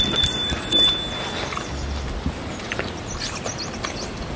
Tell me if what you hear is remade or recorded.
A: recorded